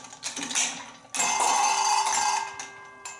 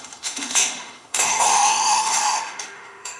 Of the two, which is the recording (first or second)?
first